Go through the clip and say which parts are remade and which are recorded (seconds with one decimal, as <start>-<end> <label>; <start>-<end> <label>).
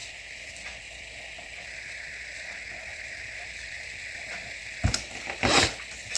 0.0-0.5 remade; 0.5-2.9 recorded; 2.9-5.6 remade; 5.6-6.2 recorded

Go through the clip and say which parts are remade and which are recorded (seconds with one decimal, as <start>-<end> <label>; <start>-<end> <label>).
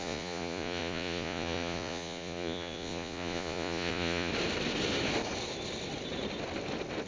0.0-4.3 remade; 4.3-7.1 recorded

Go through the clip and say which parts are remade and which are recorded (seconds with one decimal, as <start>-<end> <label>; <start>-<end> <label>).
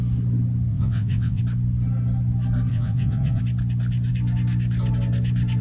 0.0-0.7 recorded; 0.7-1.4 remade; 1.4-2.7 recorded; 2.7-3.4 remade; 3.4-5.6 recorded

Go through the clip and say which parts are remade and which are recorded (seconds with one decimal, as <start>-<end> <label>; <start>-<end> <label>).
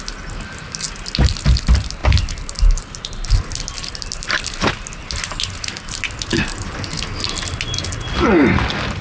0.0-9.0 recorded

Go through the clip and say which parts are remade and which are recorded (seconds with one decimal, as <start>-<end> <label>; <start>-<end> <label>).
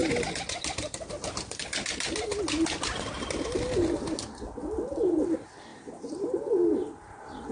0.0-5.7 recorded; 5.7-7.0 remade; 7.0-7.5 recorded